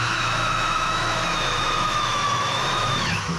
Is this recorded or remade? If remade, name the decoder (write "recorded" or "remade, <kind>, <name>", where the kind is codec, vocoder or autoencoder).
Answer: remade, autoencoder, DAC-VAE